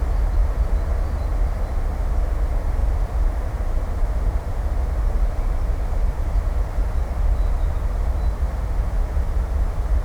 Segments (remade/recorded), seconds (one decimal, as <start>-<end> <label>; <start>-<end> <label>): 0.0-1.3 recorded; 1.3-2.1 remade; 2.1-2.8 recorded; 2.8-7.6 remade; 7.6-10.0 recorded